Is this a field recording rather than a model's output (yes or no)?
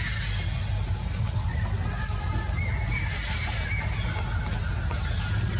yes